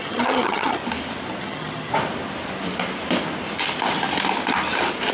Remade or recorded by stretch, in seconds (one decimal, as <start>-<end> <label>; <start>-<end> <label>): 0.0-0.8 remade; 0.8-1.4 recorded; 1.4-1.9 remade; 1.9-5.1 recorded